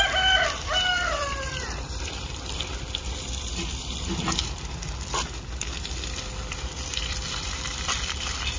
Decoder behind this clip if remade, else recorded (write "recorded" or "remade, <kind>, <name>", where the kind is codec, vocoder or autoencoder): remade, vocoder, BigVGAN v2